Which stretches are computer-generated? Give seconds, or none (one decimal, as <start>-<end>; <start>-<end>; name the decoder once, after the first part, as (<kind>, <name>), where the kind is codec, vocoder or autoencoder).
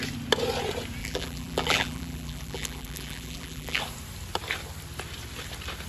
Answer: 1.0-3.8 (vocoder, BigVGAN v2)